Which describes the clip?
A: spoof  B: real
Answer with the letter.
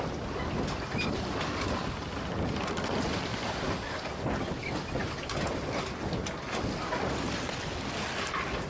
B